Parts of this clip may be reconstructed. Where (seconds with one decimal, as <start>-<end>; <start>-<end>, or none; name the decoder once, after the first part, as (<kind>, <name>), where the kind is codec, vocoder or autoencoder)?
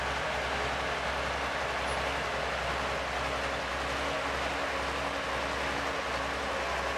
none